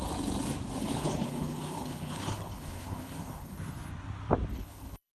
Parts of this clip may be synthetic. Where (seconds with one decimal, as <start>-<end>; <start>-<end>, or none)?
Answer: 0.8-3.9; 4.5-5.1